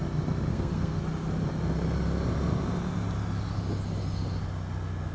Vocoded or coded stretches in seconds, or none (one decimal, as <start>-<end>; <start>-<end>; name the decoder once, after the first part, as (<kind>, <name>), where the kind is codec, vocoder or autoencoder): 0.5-1.0 (codec, SNAC)